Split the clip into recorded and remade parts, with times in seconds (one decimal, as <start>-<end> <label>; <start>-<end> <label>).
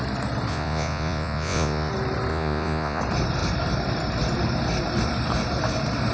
0.0-0.5 recorded; 0.5-1.9 remade; 1.9-2.3 recorded; 2.3-3.0 remade; 3.0-6.1 recorded